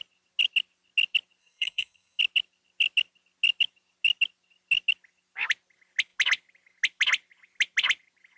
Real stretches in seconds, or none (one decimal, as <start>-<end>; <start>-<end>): 0.0-1.4; 2.2-8.4